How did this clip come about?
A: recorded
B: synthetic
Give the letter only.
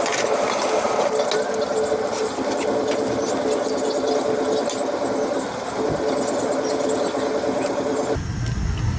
A